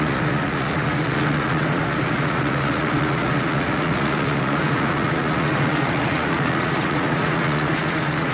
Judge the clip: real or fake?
fake